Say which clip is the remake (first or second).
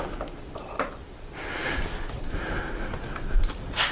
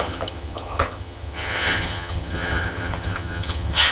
second